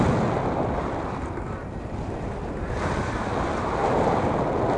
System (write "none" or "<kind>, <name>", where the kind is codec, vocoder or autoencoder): none